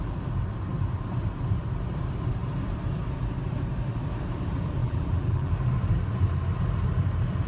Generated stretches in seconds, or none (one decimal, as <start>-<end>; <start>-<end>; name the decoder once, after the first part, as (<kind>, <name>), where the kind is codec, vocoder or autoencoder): 4.8-5.5 (vocoder, BigVGAN v2)